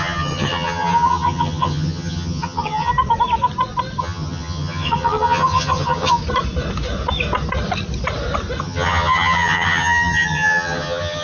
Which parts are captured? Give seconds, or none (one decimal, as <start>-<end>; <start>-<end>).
2.9-4.0; 6.2-8.6